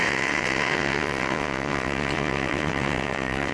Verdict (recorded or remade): remade